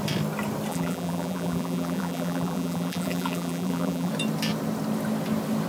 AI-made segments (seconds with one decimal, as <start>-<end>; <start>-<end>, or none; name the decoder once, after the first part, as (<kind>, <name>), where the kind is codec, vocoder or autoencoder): 0.7-4.1 (vocoder, BigVGAN v2)